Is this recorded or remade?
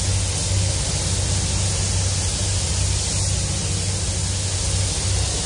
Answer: recorded